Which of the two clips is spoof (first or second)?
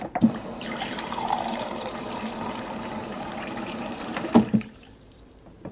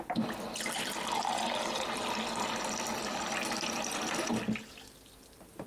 first